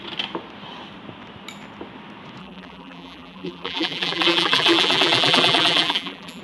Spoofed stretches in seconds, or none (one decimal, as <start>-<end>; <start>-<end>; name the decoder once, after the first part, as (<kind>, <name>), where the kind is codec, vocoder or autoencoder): 2.4-6.4 (vocoder, BigVGAN v2)